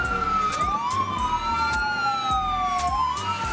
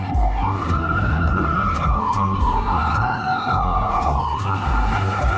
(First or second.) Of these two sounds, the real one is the first